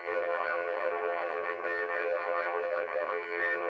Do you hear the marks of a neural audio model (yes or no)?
yes